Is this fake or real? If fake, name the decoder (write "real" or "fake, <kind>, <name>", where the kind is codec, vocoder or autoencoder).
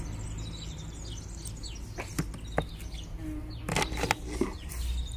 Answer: real